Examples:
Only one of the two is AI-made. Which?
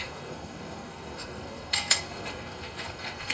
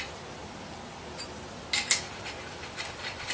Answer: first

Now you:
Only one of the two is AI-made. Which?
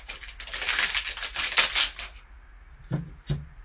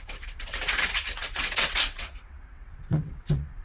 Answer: second